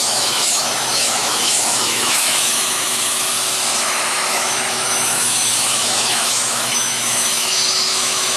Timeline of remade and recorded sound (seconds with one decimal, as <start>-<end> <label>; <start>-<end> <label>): 0.0-3.3 remade; 3.3-3.8 recorded; 3.8-8.4 remade